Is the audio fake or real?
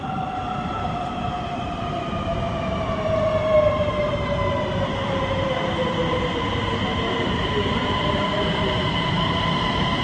fake